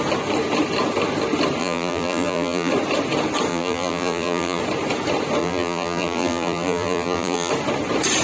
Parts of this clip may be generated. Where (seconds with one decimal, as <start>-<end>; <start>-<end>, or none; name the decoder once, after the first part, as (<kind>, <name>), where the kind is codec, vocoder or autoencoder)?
1.6-2.7 (vocoder, BigVGAN v2); 3.5-4.6; 5.4-7.5